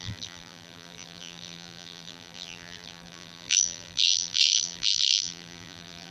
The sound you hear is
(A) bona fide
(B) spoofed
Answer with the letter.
B